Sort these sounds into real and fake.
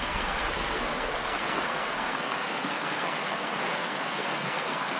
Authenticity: fake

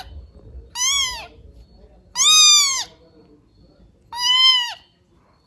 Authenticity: real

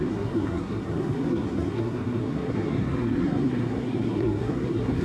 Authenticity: fake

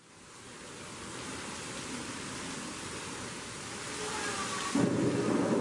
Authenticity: real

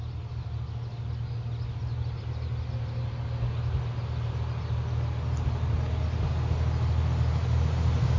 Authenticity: real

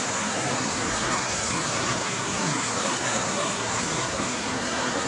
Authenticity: fake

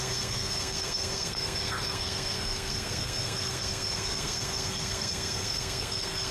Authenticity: fake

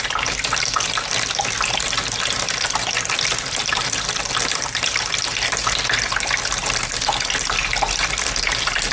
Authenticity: real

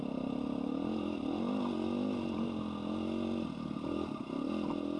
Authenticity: real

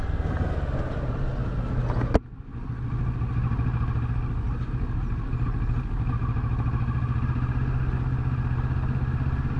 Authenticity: real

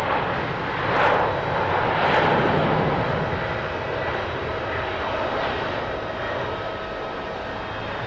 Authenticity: real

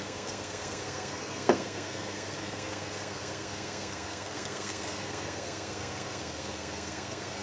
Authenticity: fake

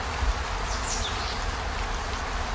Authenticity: real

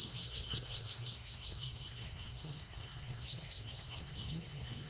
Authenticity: fake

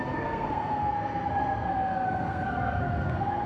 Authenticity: fake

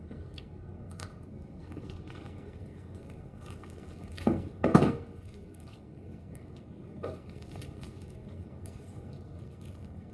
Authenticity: fake